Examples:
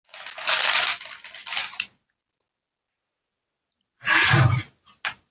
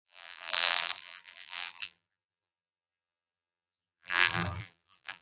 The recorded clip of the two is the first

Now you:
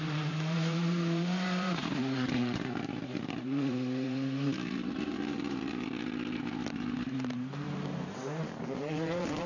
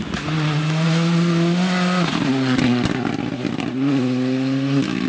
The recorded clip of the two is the second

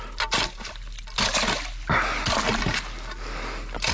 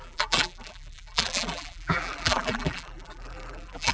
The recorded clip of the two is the first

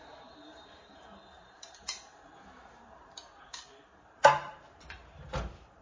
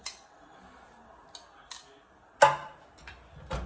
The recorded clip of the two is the second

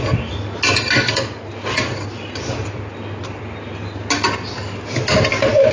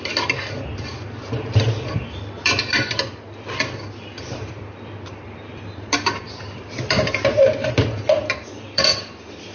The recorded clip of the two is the first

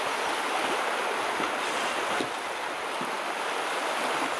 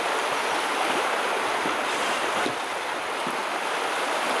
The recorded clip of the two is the first